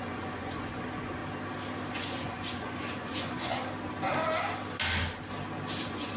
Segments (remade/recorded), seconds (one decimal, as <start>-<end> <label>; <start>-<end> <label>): 0.0-1.2 remade; 1.2-1.9 recorded; 1.9-3.6 remade; 3.6-5.8 recorded; 5.8-6.2 remade